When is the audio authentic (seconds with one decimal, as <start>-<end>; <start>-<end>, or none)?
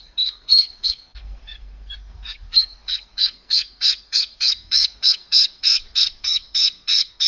none